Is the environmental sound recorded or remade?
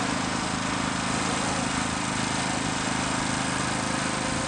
recorded